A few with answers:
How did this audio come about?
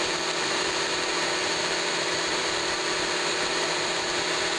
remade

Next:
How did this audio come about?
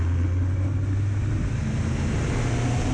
recorded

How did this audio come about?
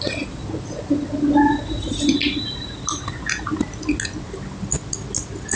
recorded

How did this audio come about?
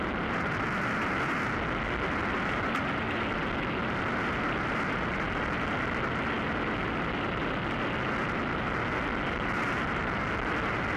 recorded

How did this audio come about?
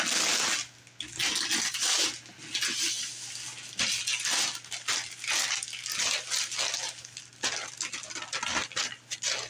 recorded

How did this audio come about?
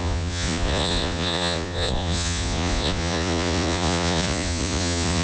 remade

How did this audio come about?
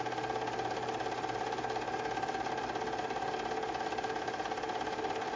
recorded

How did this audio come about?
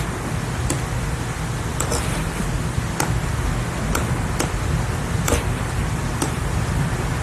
recorded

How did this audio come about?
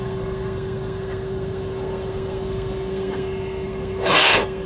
remade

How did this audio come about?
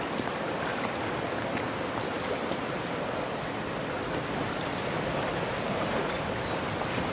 recorded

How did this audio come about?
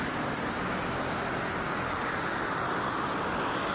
recorded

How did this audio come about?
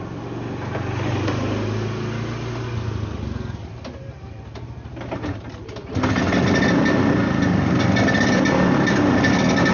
recorded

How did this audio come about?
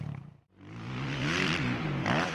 recorded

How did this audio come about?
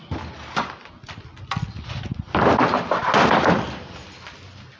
recorded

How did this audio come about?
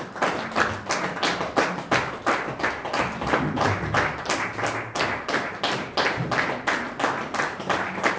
recorded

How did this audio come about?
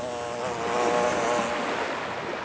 recorded